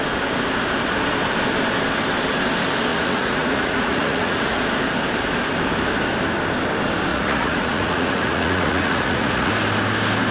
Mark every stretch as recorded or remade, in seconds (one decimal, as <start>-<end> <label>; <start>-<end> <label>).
0.0-2.9 recorded; 2.9-4.6 remade; 4.6-7.1 recorded; 7.1-9.5 remade; 9.5-10.3 recorded